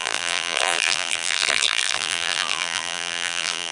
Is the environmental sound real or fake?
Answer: fake